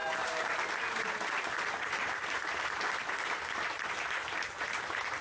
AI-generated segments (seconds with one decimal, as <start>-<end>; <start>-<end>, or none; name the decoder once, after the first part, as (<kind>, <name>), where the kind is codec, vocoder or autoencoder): none